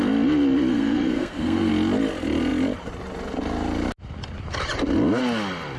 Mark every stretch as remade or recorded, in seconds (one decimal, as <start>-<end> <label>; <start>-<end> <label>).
0.0-0.7 recorded; 0.7-1.7 remade; 1.7-5.8 recorded